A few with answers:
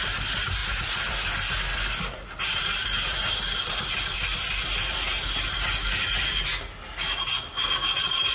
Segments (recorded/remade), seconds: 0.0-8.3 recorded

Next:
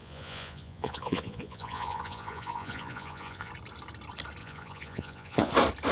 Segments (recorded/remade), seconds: 0.0-3.5 remade; 3.5-4.4 recorded; 4.4-5.5 remade; 5.5-5.9 recorded

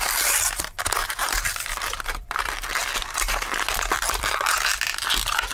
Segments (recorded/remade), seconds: 0.0-1.0 recorded; 1.0-4.3 remade; 4.3-5.5 recorded

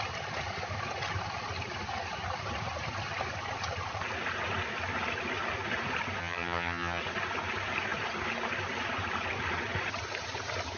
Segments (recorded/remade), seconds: 0.0-6.2 recorded; 6.2-7.0 remade; 7.0-10.8 recorded